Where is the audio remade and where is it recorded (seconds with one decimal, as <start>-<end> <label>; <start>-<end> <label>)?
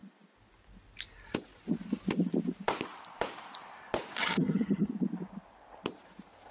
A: 0.0-4.2 recorded; 4.2-4.9 remade; 4.9-6.5 recorded